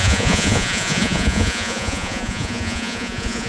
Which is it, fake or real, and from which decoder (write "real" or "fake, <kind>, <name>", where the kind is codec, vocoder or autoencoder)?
fake, vocoder, Vocos